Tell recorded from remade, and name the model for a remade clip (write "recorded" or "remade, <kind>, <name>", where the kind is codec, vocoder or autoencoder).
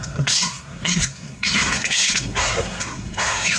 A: remade, codec, SNAC